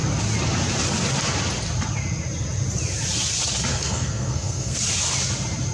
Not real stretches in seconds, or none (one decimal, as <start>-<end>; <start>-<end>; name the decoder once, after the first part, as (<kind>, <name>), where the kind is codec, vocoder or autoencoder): 3.7-4.8 (codec, SNAC)